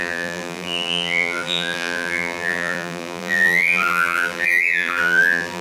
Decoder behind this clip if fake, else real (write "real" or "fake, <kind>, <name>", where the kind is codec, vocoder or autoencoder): fake, vocoder, BigVGAN v2